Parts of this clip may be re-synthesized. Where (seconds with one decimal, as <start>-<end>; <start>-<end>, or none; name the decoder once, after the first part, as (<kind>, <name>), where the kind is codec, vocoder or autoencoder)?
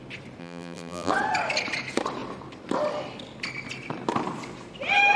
0.4-1.1 (vocoder, BigVGAN v2)